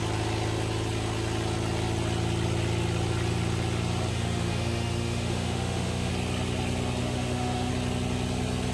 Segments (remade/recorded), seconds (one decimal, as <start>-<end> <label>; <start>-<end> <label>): 0.0-4.1 recorded; 4.1-6.1 remade; 6.1-7.0 recorded; 7.0-7.7 remade; 7.7-8.7 recorded